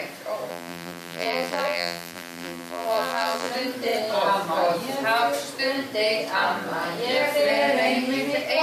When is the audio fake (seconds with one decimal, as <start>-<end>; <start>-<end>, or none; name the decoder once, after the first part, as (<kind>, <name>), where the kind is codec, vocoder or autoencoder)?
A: 0.5-3.5 (vocoder, BigVGAN v2)